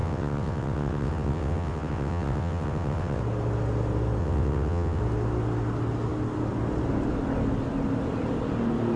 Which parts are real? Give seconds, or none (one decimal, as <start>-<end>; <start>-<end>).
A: 3.2-4.2; 5.0-9.0